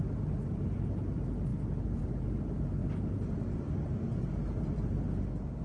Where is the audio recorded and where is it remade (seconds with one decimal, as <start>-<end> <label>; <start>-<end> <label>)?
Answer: 0.0-5.6 recorded